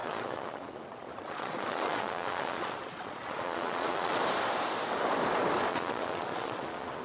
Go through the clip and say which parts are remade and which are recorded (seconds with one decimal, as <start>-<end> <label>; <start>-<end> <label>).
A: 0.0-4.2 remade; 4.2-5.7 recorded; 5.7-7.0 remade

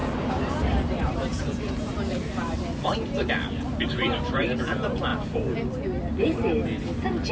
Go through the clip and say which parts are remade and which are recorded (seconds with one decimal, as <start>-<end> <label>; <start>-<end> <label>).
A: 0.0-3.3 remade; 3.3-7.3 recorded